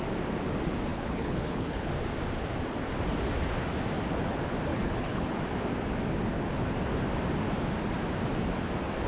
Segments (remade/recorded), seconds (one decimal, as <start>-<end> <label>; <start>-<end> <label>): 0.0-0.9 recorded; 0.9-1.9 remade; 1.9-4.7 recorded; 4.7-5.4 remade; 5.4-9.1 recorded